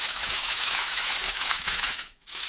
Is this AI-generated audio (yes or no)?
yes